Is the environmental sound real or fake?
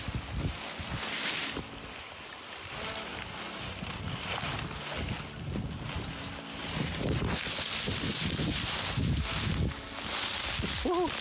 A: real